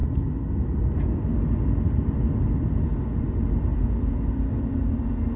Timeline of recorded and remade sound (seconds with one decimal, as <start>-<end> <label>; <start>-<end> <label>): 0.0-5.4 recorded